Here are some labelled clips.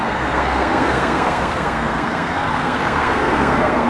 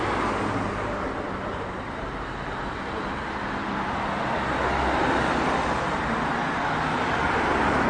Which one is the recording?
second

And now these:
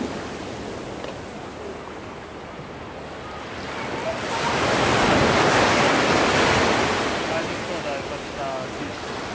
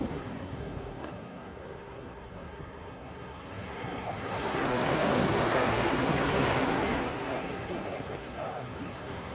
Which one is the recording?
first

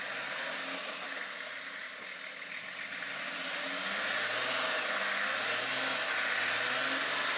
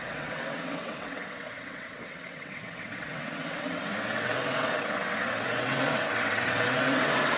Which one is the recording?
first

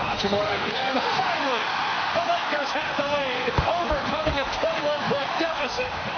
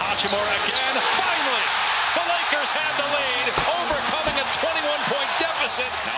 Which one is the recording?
second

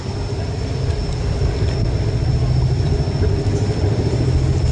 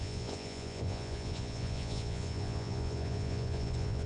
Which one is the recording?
first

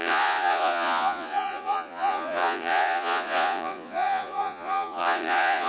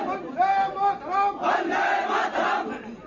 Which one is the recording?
second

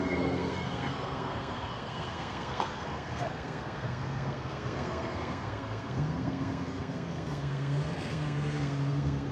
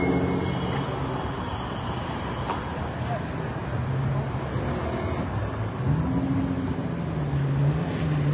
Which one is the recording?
second